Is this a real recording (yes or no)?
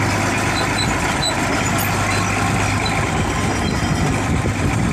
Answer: yes